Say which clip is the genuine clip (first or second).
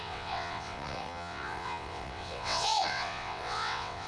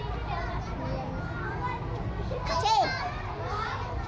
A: second